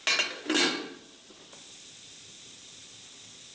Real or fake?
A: real